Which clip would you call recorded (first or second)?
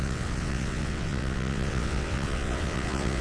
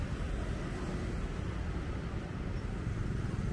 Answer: second